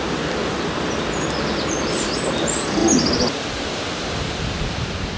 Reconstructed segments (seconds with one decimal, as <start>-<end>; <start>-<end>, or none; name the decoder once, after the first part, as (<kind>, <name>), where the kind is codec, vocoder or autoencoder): none